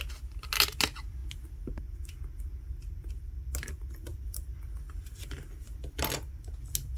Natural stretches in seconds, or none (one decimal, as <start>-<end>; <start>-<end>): 0.0-4.1; 6.0-7.0